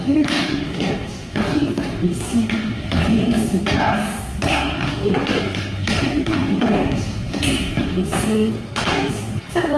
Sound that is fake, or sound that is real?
fake